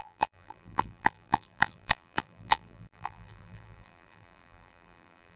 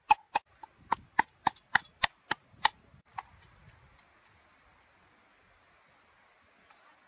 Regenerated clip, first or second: first